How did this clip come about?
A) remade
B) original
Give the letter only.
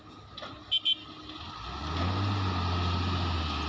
B